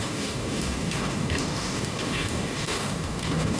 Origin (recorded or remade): remade